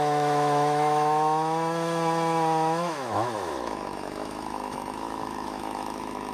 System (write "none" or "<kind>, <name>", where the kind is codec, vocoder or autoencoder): autoencoder, DAC-VAE